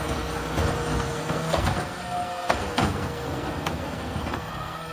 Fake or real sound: fake